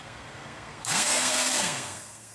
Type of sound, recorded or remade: remade